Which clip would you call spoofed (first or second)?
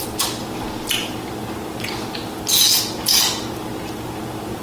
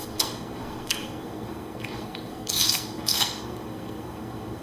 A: second